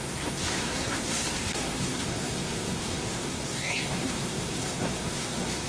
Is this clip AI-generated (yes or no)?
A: yes